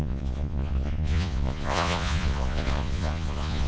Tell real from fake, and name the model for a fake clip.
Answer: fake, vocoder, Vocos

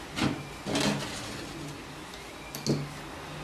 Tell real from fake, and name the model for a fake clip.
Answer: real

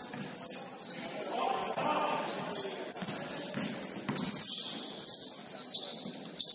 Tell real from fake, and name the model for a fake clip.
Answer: real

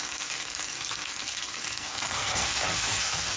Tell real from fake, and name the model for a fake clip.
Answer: fake, codec, SNAC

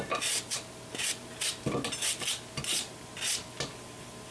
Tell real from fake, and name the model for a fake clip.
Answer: real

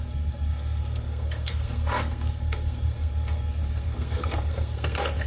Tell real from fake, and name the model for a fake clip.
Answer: fake, codec, SNAC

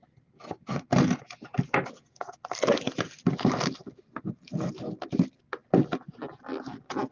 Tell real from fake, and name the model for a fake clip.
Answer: real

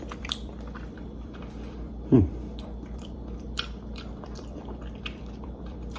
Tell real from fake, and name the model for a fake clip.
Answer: fake, vocoder, BigVGAN v2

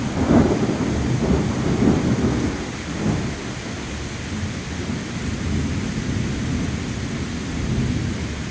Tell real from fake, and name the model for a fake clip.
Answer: real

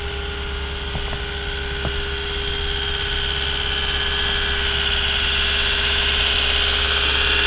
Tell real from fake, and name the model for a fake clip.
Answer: real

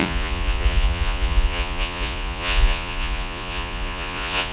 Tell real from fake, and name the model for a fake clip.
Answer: fake, vocoder, Vocos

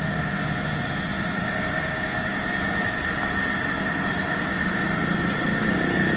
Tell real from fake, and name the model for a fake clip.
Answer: real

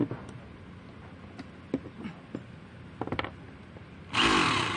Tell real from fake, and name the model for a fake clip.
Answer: real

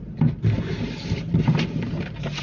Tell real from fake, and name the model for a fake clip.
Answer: real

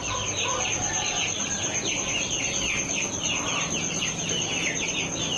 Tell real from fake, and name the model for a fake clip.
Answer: real